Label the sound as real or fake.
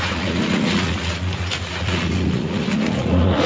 fake